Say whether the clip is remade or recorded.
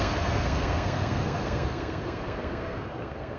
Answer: remade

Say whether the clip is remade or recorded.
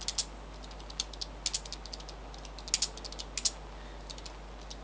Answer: recorded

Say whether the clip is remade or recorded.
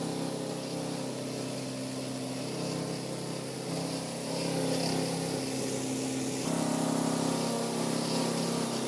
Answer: recorded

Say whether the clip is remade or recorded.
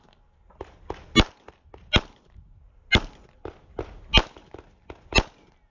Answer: recorded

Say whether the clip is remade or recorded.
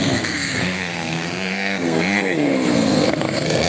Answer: remade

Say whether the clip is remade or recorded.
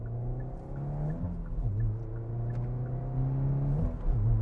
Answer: recorded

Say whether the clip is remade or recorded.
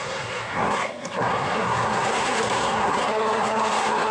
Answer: remade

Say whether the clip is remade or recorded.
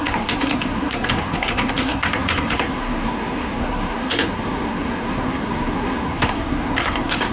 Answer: remade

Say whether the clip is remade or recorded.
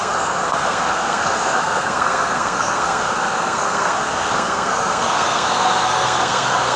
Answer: remade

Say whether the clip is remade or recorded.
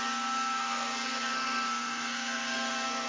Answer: remade